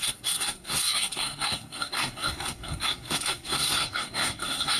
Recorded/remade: remade